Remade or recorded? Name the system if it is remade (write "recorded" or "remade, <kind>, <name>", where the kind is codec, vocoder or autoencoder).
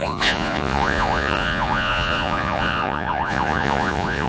remade, vocoder, Vocos